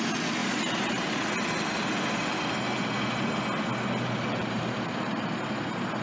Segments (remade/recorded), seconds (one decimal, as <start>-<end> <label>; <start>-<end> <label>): 0.0-0.4 recorded; 0.4-1.3 remade; 1.3-4.4 recorded; 4.4-5.1 remade; 5.1-6.0 recorded